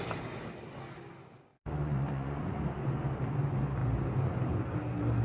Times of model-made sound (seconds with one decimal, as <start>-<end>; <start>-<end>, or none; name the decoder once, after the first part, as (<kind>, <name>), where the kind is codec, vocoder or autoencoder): 1.5-2.6 (vocoder, Vocos)